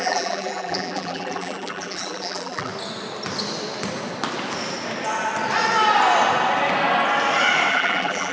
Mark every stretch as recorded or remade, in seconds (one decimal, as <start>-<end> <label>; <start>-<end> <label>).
0.0-2.7 remade; 2.7-7.7 recorded; 7.7-8.3 remade